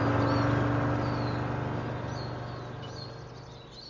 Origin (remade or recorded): recorded